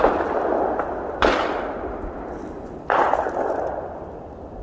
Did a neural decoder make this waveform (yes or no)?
no